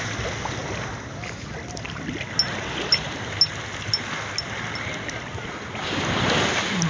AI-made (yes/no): no